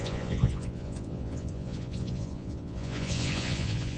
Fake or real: fake